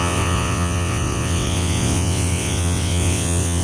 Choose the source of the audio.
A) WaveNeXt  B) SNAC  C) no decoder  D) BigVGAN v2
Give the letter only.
A